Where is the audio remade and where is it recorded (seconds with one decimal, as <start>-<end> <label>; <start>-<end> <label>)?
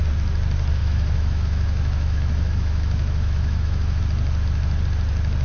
0.0-0.8 recorded; 0.8-4.0 remade; 4.0-5.4 recorded